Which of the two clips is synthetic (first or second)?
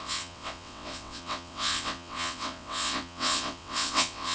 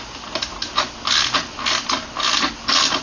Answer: first